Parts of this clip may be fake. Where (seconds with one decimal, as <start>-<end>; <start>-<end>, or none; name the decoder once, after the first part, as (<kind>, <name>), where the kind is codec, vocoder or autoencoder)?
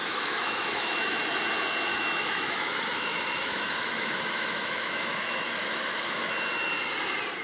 0.0-1.2 (autoencoder, DAC-VAE); 1.9-6.3